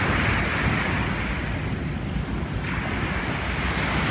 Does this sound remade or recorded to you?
recorded